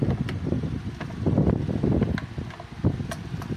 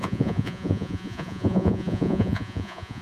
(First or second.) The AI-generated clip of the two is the second